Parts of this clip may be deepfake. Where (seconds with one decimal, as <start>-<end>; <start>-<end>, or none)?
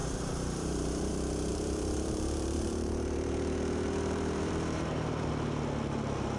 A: 0.0-1.1; 1.5-5.3